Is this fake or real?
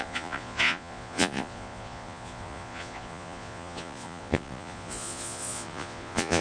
fake